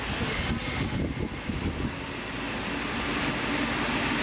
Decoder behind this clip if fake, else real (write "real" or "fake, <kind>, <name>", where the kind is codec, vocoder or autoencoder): real